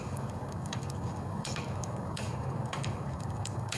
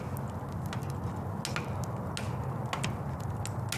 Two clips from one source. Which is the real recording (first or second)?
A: second